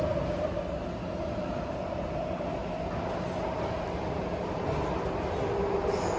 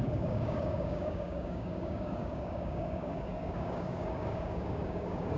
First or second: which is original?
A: first